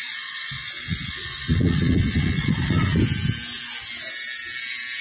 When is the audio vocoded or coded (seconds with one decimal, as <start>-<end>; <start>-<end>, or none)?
0.0-3.0